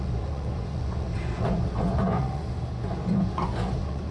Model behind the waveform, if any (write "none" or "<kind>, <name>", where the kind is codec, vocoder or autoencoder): vocoder, Vocos